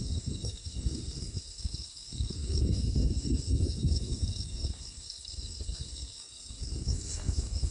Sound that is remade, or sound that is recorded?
remade